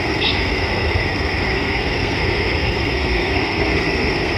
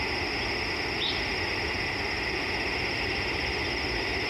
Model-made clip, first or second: first